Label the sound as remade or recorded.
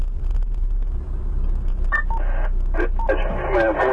recorded